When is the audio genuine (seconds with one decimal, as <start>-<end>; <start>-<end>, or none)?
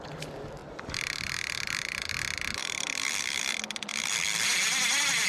0.0-0.6; 2.1-2.6; 3.4-3.9